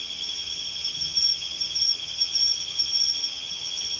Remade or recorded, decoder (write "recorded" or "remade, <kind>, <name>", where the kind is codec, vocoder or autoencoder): remade, vocoder, HiFi-GAN